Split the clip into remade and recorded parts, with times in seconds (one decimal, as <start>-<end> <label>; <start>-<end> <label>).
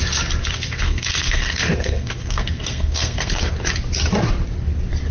0.0-0.4 recorded; 0.4-3.5 remade; 3.5-5.1 recorded